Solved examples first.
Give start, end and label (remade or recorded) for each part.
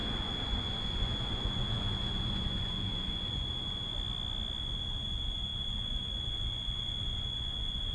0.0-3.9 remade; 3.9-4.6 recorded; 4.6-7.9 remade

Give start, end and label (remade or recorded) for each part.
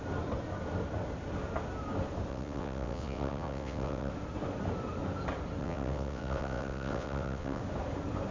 0.0-2.3 recorded; 2.3-4.1 remade; 4.1-5.6 recorded; 5.6-7.6 remade; 7.6-8.3 recorded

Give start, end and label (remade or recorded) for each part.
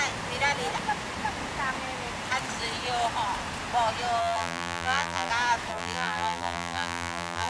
0.0-4.2 recorded; 4.2-5.3 remade; 5.3-5.7 recorded; 5.7-7.5 remade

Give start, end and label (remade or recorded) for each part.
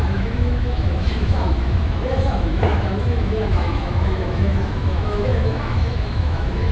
0.0-6.7 remade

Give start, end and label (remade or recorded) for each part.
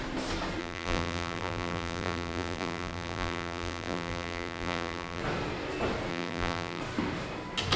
0.0-0.6 recorded; 0.6-5.2 remade; 5.2-6.1 recorded; 6.1-6.8 remade; 6.8-7.8 recorded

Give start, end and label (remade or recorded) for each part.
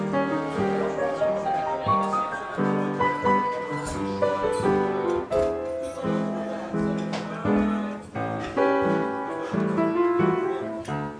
0.0-11.2 recorded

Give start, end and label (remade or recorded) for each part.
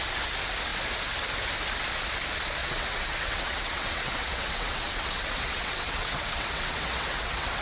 0.0-2.6 recorded; 2.6-7.6 remade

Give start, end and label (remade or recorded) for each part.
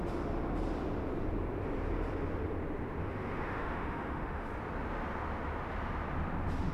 0.0-3.0 recorded; 3.0-4.5 remade; 4.5-6.7 recorded